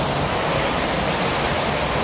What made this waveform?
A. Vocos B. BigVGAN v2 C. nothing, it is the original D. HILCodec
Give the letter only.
C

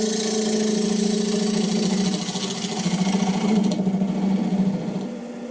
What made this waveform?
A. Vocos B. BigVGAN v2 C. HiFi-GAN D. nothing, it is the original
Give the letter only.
D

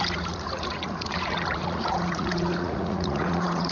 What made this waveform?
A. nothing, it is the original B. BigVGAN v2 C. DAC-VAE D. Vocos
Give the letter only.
D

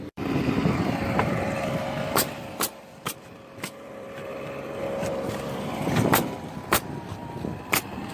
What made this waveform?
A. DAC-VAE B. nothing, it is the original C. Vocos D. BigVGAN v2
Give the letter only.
D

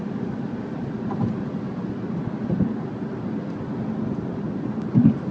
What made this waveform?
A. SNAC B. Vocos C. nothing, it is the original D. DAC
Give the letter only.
C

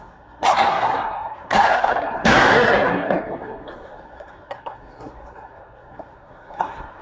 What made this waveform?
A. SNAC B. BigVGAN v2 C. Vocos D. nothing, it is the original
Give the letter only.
A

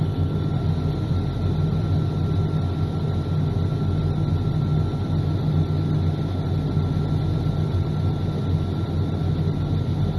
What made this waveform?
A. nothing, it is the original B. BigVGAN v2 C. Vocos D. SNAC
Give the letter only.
A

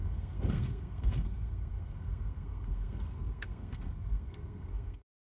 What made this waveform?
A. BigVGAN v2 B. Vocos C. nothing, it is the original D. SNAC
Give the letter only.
D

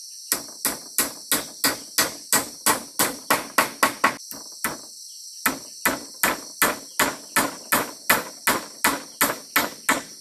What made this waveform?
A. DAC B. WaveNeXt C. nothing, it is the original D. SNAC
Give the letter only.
C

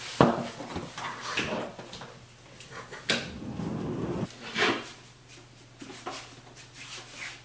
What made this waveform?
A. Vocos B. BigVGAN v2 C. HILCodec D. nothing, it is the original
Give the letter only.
D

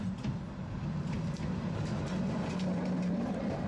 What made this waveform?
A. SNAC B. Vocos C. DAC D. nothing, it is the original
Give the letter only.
D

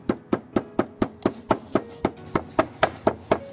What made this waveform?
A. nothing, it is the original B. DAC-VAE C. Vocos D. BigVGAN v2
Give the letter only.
A